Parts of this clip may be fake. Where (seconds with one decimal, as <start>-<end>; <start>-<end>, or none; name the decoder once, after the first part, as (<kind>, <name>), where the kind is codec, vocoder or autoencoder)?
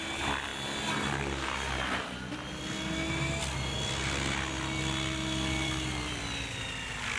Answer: 0.0-0.5 (vocoder, BigVGAN v2); 4.8-7.2